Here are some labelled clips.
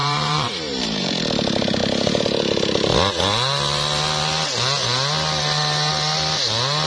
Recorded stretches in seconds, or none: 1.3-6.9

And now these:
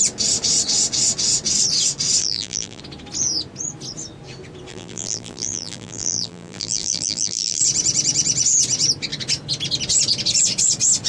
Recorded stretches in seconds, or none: 0.0-2.2; 2.8-4.7; 7.6-11.1

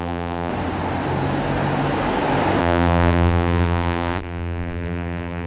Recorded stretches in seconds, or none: 0.5-2.6